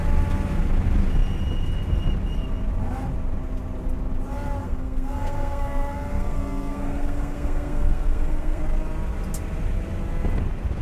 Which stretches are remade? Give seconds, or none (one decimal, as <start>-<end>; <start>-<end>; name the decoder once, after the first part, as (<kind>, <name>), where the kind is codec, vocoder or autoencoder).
4.6-8.6 (codec, SNAC)